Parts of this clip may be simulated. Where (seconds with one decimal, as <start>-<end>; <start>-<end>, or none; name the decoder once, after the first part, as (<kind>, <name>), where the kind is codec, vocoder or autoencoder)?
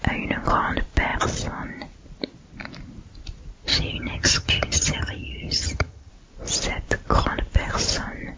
3.7-6.1 (vocoder, HiFi-GAN)